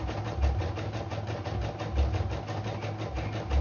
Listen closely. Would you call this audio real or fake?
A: real